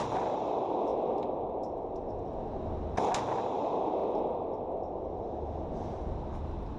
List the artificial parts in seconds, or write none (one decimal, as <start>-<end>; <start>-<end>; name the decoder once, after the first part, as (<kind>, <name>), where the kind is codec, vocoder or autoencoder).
none

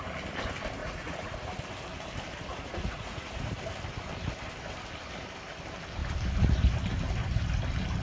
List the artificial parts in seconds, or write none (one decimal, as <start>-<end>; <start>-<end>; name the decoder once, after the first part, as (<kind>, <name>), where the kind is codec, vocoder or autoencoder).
0.8-1.6 (vocoder, Vocos); 2.5-3.6

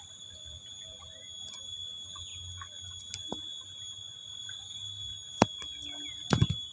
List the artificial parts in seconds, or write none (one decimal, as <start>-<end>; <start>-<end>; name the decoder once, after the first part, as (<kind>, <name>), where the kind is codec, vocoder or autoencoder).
none

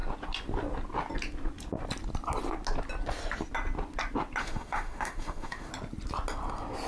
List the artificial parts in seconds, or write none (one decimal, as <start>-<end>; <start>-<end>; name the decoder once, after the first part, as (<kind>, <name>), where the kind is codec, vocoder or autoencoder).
4.4-5.7 (autoencoder, DAC-VAE)

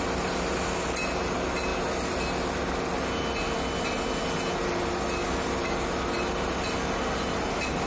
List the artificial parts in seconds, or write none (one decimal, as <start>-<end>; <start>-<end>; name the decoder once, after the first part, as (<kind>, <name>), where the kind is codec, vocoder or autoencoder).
none

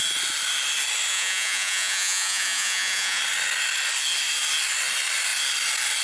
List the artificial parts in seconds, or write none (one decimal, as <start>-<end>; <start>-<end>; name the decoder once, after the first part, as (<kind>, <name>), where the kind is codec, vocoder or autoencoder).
1.1-3.2 (vocoder, Vocos)

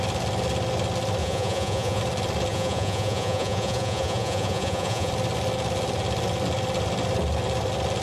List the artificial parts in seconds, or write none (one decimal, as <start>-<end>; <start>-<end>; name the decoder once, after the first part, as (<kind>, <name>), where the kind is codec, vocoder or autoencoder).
1.2-2.0 (vocoder, Vocos); 2.5-5.1